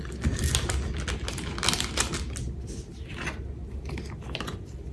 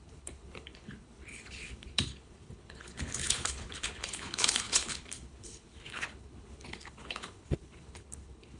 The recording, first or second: first